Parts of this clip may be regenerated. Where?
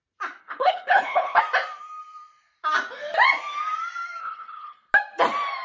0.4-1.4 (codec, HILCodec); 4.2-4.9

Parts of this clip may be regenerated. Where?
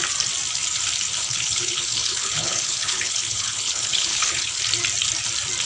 1.2-4.6 (codec, HILCodec)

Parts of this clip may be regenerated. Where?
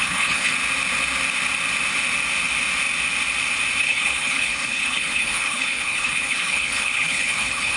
0.0-0.5 (codec, HILCodec); 3.8-7.8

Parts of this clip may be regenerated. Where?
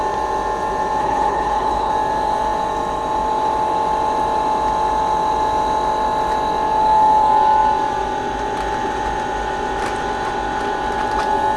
1.0-1.9 (codec, HILCodec)